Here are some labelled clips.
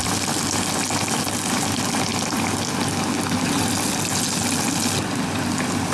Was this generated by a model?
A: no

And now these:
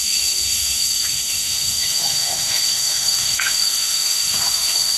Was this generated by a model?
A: yes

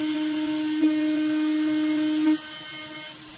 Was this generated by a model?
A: no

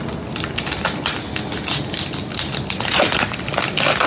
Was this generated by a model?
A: no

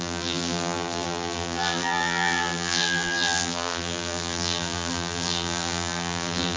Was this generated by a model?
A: yes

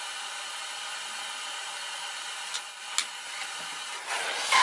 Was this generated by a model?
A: no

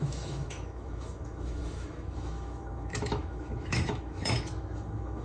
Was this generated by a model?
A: yes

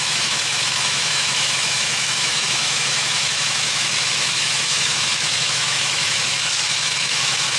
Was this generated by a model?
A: yes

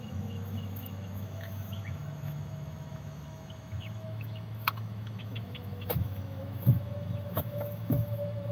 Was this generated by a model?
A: yes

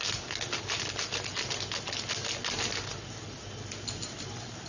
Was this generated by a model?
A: no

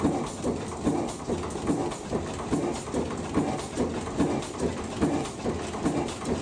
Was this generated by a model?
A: no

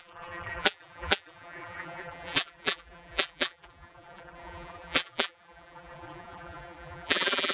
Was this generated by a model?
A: yes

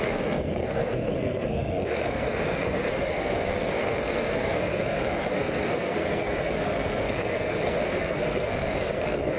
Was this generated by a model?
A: yes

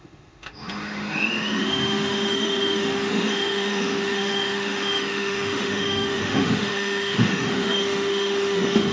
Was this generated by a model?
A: yes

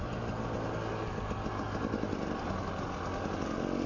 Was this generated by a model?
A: no